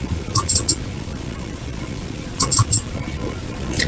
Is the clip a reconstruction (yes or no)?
yes